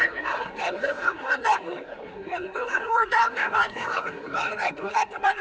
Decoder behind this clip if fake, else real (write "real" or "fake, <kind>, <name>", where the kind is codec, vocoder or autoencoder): fake, codec, SNAC